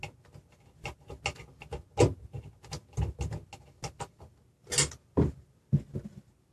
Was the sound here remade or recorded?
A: recorded